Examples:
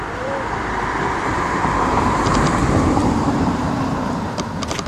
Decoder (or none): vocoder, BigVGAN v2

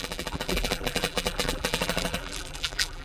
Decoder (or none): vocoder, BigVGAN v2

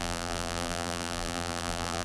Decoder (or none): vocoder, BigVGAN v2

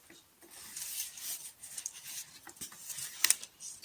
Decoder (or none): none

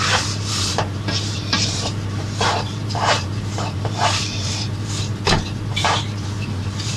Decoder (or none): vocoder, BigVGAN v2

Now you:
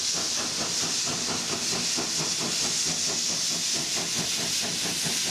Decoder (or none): none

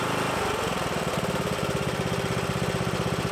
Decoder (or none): vocoder, BigVGAN v2